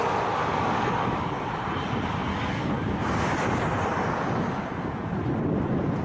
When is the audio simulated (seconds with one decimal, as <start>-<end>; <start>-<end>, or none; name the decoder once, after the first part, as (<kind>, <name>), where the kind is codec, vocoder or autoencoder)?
0.4-1.5 (codec, DAC); 2.3-3.0